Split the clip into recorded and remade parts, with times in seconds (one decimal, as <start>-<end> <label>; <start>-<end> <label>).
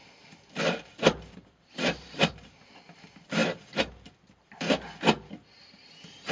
0.0-2.3 remade; 2.3-6.3 recorded